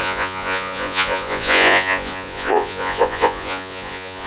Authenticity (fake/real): fake